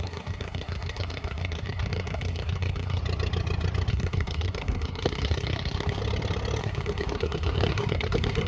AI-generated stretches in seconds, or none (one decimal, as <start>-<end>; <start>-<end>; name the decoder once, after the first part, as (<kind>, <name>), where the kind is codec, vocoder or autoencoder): 0.0-3.0 (codec, SNAC); 3.9-6.0; 6.6-8.5